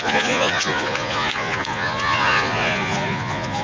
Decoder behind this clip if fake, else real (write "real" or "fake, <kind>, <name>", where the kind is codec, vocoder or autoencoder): fake, vocoder, Vocos